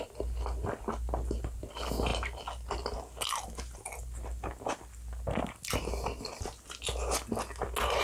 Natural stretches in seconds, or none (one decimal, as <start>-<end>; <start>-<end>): 0.0-8.0